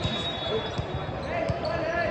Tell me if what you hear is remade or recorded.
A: recorded